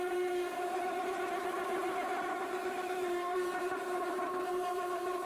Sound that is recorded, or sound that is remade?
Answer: remade